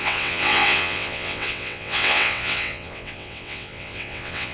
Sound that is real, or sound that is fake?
fake